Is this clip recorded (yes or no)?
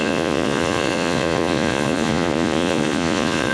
no